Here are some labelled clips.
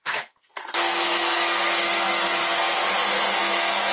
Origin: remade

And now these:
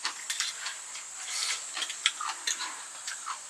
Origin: recorded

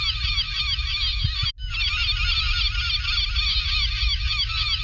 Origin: recorded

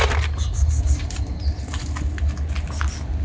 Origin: recorded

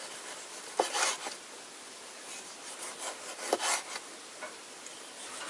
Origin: recorded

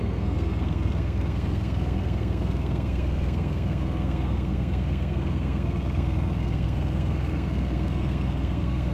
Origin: remade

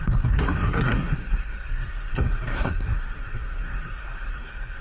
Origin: remade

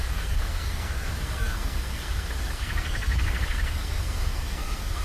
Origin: remade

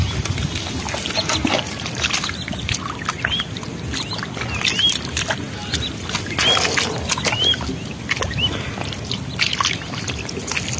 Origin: recorded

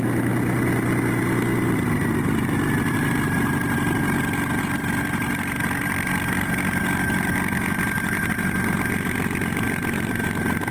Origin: recorded